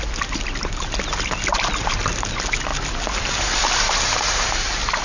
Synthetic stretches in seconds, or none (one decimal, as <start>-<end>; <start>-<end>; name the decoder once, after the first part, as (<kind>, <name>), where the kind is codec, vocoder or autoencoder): none